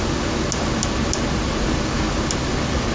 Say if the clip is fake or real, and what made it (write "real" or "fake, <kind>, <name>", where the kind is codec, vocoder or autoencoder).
real